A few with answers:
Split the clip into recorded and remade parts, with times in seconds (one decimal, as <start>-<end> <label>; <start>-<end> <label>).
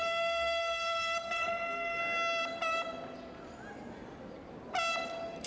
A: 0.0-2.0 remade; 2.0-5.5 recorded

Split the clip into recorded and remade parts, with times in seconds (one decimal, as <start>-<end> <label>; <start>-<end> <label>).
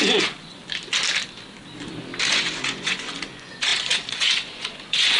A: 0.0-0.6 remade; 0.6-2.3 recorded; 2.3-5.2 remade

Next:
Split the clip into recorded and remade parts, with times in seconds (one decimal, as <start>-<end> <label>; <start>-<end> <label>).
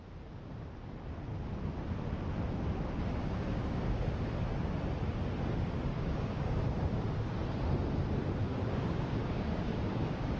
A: 0.0-3.2 recorded; 3.2-4.3 remade; 4.3-5.9 recorded; 5.9-6.6 remade; 6.6-8.5 recorded; 8.5-10.4 remade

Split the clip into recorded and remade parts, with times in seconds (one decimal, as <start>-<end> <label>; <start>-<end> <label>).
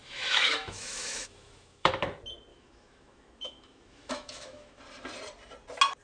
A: 0.0-1.9 remade; 1.9-2.5 recorded; 2.5-4.8 remade; 4.8-6.0 recorded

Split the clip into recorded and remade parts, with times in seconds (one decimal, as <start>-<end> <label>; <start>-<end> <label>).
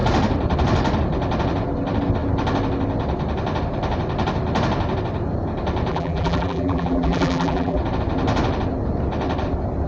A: 0.0-5.9 recorded; 5.9-7.8 remade; 7.8-9.9 recorded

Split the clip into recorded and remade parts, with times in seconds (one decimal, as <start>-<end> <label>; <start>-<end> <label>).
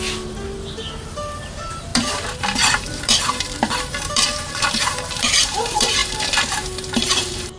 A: 0.0-7.6 remade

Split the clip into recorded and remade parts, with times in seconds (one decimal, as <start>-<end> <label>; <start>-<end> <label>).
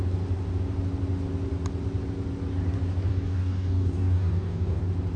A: 0.0-3.1 recorded; 3.1-4.8 remade; 4.8-5.2 recorded